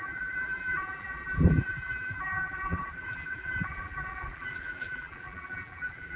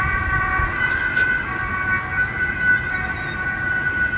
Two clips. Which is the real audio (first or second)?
second